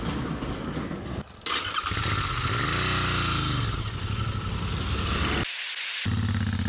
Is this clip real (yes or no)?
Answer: yes